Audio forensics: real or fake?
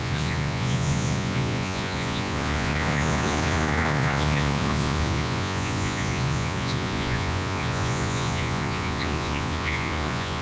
fake